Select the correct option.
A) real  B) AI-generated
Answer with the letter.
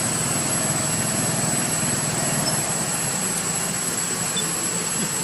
A